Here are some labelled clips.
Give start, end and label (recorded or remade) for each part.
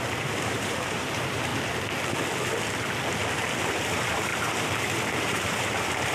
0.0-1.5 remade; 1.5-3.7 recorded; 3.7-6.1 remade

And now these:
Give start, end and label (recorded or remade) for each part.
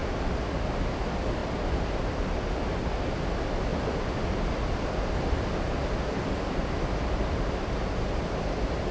0.0-1.0 remade; 1.0-1.4 recorded; 1.4-2.4 remade; 2.4-3.7 recorded; 3.7-7.5 remade; 7.5-8.9 recorded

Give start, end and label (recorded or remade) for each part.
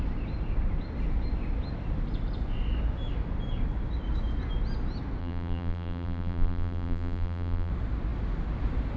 0.0-5.2 recorded; 5.2-7.7 remade; 7.7-9.0 recorded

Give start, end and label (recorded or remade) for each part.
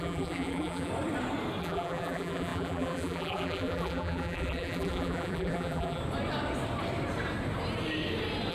0.0-0.9 remade; 0.9-1.6 recorded; 1.6-6.0 remade; 6.0-8.5 recorded